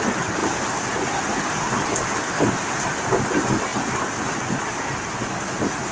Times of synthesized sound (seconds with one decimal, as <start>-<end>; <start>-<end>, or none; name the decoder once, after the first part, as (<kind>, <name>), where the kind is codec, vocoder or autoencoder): none